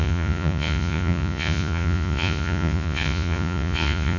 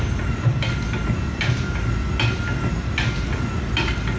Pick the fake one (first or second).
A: first